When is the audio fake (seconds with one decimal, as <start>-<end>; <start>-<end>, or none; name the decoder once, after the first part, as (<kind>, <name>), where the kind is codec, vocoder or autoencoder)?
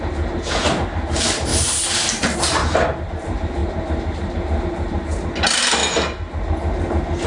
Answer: 0.0-1.5 (vocoder, BigVGAN v2); 2.1-3.6; 4.6-5.8